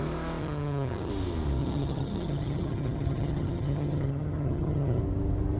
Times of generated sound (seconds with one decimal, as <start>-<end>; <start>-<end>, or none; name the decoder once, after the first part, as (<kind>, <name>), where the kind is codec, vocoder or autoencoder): 0.4-1.1 (vocoder, HiFi-GAN); 1.6-5.0